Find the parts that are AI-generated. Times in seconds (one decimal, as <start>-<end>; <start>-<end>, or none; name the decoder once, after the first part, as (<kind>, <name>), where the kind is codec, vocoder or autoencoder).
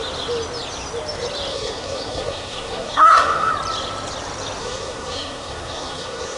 1.5-3.5 (codec, SNAC); 4.6-6.4